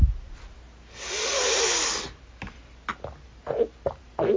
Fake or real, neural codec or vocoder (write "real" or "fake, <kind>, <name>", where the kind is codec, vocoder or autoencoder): real